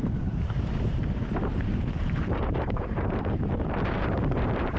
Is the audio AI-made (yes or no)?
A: yes